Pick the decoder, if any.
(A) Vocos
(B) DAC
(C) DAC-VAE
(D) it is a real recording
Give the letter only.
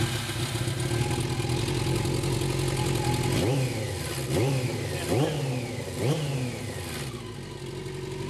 D